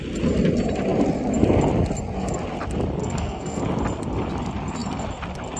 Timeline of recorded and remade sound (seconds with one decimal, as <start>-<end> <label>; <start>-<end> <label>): 0.0-3.0 recorded; 3.0-3.6 remade; 3.6-5.6 recorded